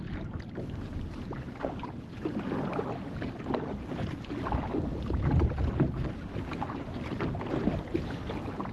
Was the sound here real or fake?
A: real